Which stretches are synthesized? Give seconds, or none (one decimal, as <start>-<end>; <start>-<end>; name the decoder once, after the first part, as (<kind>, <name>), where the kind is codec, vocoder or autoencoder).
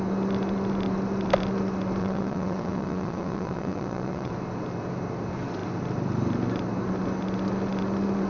2.0-4.3 (vocoder, WaveNeXt)